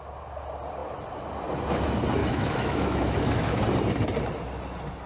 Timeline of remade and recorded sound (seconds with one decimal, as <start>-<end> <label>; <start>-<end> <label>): 0.0-2.2 recorded; 2.2-3.6 remade; 3.6-5.1 recorded

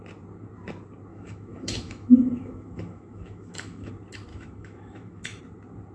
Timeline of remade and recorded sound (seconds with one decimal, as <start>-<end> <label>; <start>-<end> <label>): 0.0-1.1 recorded; 1.1-3.9 remade; 3.9-4.3 recorded; 4.3-5.4 remade; 5.4-5.9 recorded

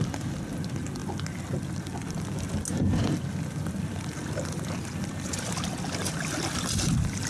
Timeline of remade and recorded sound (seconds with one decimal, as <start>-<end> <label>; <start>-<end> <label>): 0.0-7.3 recorded

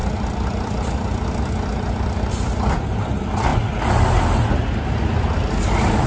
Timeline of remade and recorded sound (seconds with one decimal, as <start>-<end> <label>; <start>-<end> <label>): 0.0-6.1 recorded

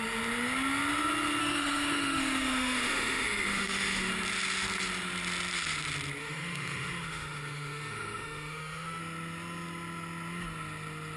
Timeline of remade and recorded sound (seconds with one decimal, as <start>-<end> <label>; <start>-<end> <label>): 0.0-1.4 recorded; 1.4-4.1 remade; 4.1-6.2 recorded; 6.2-9.0 remade; 9.0-11.2 recorded

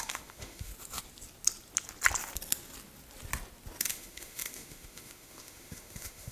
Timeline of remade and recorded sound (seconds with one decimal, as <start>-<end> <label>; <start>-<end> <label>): 0.0-0.7 remade; 0.7-3.8 recorded; 3.8-6.3 remade

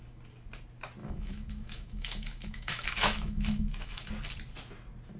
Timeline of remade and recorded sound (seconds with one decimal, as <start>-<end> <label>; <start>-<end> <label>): 0.0-1.0 recorded; 1.0-4.1 remade; 4.1-5.2 recorded